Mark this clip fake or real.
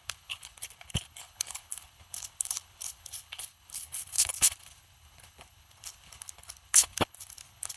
fake